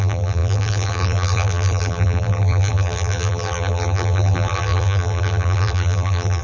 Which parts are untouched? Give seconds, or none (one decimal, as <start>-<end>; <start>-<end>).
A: none